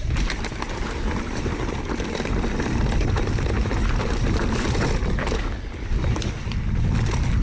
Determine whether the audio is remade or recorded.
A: recorded